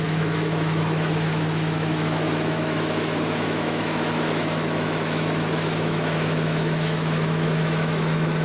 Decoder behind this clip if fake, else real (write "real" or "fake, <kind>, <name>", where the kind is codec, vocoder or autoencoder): fake, autoencoder, DAC-VAE